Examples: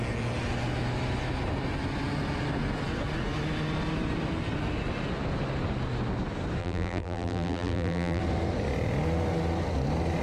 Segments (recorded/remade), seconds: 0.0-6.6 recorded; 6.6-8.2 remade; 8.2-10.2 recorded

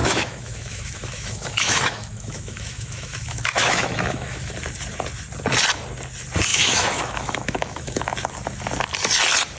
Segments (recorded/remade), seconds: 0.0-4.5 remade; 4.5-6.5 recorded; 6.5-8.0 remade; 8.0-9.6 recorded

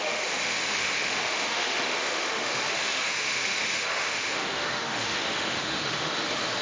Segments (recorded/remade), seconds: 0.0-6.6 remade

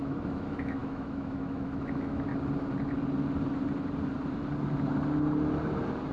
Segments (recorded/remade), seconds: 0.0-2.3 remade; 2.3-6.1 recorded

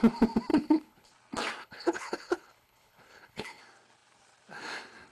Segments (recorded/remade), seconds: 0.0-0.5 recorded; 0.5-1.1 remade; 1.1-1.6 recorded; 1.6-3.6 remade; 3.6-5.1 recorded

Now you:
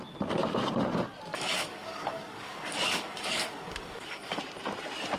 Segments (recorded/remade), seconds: 0.0-1.3 recorded; 1.3-4.4 remade; 4.4-5.2 recorded

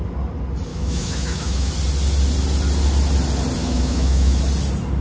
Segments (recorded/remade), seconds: 0.0-0.7 recorded; 0.7-1.7 remade; 1.7-3.6 recorded; 3.6-4.4 remade; 4.4-5.0 recorded